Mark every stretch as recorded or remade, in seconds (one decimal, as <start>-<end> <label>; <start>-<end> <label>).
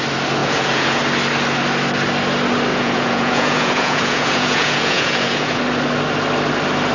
0.0-0.4 recorded; 0.4-1.0 remade; 1.0-2.7 recorded; 2.7-5.6 remade; 5.6-6.9 recorded